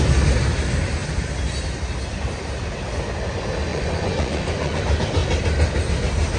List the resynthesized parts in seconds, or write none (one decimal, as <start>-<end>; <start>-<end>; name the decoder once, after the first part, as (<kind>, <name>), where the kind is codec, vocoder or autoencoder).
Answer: 3.7-4.8 (vocoder, Vocos)